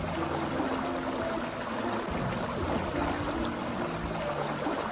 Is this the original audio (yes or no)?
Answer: yes